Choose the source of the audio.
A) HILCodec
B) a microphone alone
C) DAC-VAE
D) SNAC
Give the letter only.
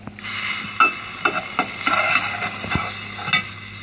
B